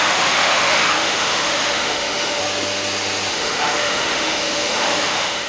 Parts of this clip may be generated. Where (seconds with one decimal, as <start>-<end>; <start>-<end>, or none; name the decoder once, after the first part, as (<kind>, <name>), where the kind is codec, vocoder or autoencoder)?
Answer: 0.0-2.4 (autoencoder, DAC-VAE); 3.3-5.5